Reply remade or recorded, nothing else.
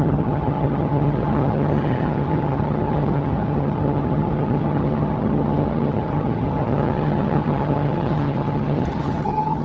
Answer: remade